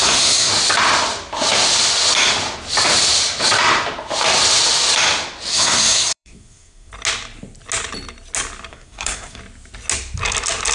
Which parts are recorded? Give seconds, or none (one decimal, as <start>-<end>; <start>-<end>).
0.5-5.5; 6.9-8.7; 9.4-10.7